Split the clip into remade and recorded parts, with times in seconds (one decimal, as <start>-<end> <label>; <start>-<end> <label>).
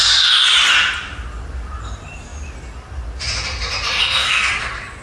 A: 0.0-4.0 recorded; 4.0-4.5 remade; 4.5-5.0 recorded